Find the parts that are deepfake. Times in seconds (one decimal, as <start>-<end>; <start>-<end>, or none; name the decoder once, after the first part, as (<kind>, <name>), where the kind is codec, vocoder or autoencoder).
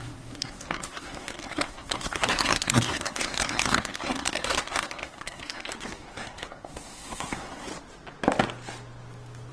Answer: 0.0-7.7 (codec, SNAC)